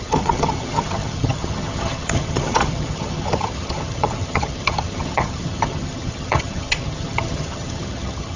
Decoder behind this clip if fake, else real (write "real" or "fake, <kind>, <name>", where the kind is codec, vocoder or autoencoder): fake, vocoder, HiFi-GAN